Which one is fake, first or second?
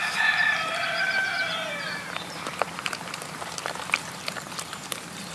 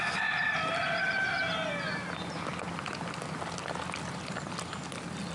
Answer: first